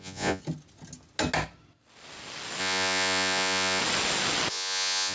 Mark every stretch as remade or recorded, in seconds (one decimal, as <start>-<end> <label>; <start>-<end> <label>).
0.0-0.4 remade; 0.4-2.6 recorded; 2.6-3.8 remade; 3.8-4.5 recorded; 4.5-5.1 remade